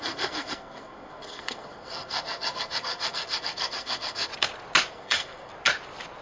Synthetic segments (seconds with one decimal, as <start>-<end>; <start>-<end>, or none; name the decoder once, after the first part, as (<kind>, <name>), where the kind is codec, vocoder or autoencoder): 0.0-4.3 (codec, SNAC); 4.9-5.5